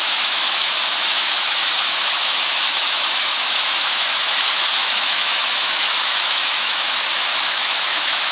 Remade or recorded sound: remade